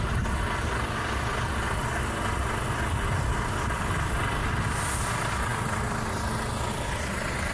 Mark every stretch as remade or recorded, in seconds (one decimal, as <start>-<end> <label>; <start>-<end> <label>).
0.0-7.5 recorded